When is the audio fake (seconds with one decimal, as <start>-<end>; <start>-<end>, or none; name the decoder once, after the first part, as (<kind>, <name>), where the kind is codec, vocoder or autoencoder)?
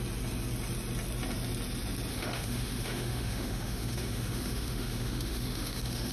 2.1-6.1 (autoencoder, DAC-VAE)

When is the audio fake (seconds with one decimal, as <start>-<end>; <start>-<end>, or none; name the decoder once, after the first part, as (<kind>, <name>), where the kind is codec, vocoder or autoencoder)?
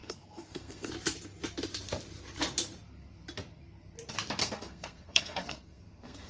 0.0-0.9 (codec, SNAC); 4.4-6.3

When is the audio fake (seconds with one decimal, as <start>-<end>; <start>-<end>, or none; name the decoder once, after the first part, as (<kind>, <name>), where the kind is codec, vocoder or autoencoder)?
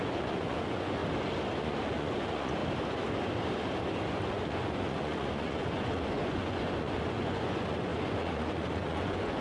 0.0-1.0 (vocoder, Vocos); 1.6-2.6; 4.3-9.4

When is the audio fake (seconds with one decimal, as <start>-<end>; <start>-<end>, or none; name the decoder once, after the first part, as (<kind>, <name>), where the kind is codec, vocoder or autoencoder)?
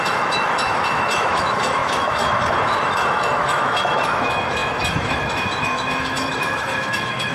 0.0-7.3 (autoencoder, DAC-VAE)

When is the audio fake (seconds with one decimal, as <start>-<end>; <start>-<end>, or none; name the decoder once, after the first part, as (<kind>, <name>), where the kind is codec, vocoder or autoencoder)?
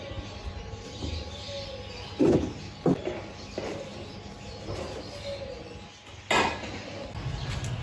0.5-1.3 (vocoder, BigVGAN v2)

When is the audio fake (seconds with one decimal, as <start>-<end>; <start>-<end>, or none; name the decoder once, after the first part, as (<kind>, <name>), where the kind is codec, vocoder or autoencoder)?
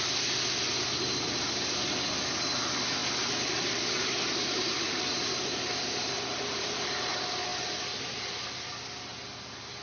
3.0-7.0 (vocoder, BigVGAN v2)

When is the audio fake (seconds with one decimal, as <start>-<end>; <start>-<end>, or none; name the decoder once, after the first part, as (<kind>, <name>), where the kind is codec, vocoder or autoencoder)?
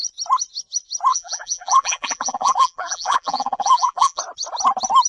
1.1-4.2 (vocoder, BigVGAN v2)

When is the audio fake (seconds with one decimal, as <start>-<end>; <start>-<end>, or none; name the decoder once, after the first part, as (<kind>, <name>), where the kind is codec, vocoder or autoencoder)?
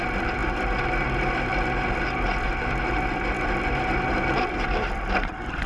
none